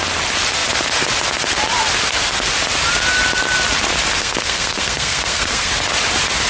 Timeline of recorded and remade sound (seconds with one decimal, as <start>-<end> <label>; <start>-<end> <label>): 0.0-4.2 recorded; 4.2-5.7 remade; 5.7-6.5 recorded